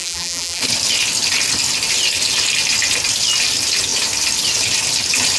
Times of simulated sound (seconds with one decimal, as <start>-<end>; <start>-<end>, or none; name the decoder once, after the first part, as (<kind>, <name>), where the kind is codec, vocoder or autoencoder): 0.0-0.6 (vocoder, BigVGAN v2)